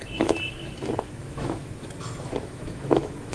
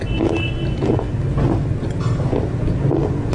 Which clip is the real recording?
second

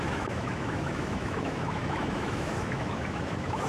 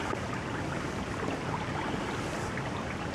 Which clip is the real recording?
second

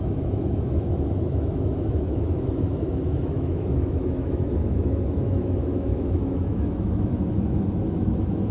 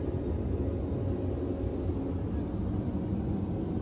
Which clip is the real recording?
second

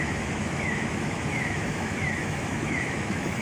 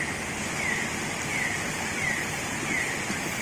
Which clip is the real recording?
second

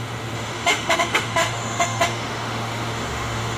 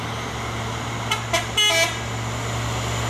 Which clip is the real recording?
second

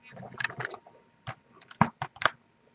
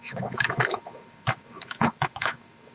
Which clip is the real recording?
first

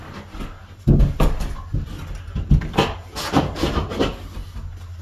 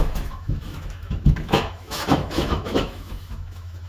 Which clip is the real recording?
first